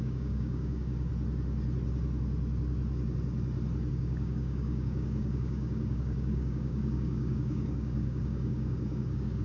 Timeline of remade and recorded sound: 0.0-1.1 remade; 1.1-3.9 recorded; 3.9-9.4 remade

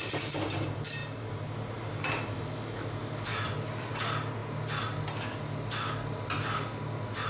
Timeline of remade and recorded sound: 0.0-3.3 recorded; 3.3-3.9 remade; 3.9-7.3 recorded

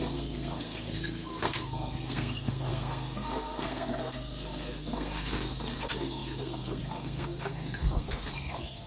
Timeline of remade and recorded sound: 0.0-8.9 remade

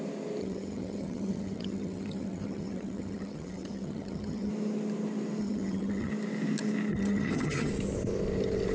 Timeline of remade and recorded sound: 0.0-0.4 recorded; 0.4-4.5 remade; 4.5-5.4 recorded; 5.4-6.1 remade; 6.1-6.9 recorded; 6.9-7.7 remade; 7.7-8.7 recorded

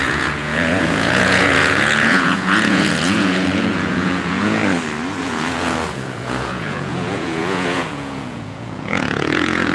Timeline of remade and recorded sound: 0.0-4.6 remade; 4.6-5.2 recorded; 5.2-9.7 remade

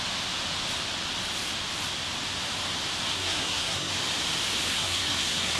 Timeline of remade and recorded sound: 0.0-3.1 recorded; 3.1-3.9 remade; 3.9-4.7 recorded; 4.7-5.6 remade